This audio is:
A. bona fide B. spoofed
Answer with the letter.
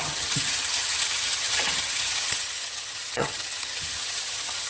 B